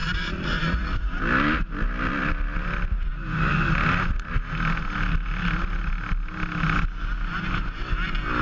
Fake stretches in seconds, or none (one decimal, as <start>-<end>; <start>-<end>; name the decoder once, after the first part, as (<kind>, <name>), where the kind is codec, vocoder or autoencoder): 0.0-1.2 (vocoder, Vocos)